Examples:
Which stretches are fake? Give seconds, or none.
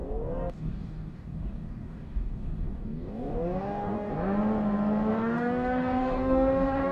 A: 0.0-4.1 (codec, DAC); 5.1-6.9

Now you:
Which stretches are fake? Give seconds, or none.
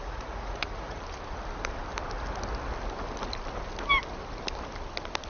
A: 0.0-1.0 (vocoder, Vocos)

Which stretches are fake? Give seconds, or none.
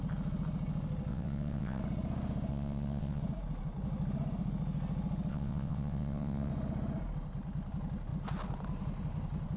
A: 1.1-1.8 (vocoder, WaveNeXt); 2.5-3.2; 5.3-6.5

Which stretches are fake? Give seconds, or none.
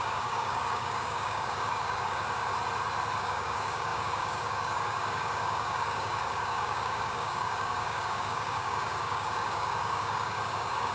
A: 0.0-2.5 (codec, DAC); 3.2-10.9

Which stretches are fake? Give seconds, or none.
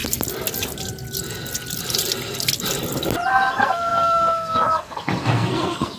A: 3.3-6.0 (codec, SNAC)